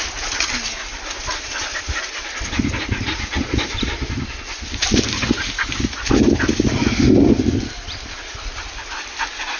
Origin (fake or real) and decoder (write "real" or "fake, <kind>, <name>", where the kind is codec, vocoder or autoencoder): real